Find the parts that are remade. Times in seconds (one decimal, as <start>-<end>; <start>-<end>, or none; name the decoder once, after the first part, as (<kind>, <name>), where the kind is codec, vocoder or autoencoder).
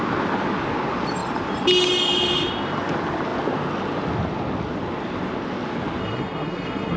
6.0-7.0 (codec, SNAC)